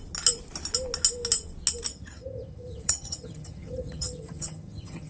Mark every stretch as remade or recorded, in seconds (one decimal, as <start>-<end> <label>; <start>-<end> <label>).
0.0-1.9 recorded; 1.9-5.1 remade